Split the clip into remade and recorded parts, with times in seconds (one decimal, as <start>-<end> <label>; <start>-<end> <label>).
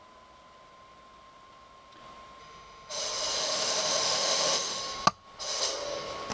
0.0-2.4 recorded; 2.4-3.0 remade; 3.0-3.4 recorded; 3.4-4.8 remade; 4.8-6.3 recorded